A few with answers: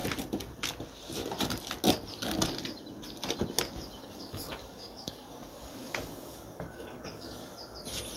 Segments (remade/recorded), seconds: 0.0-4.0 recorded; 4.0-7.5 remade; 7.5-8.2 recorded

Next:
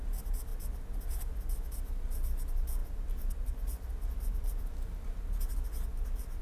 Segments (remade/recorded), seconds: 0.0-6.4 recorded